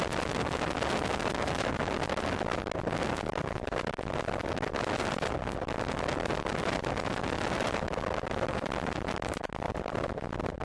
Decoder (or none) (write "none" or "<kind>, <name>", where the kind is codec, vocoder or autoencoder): none